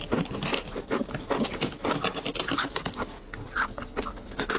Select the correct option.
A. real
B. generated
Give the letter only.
A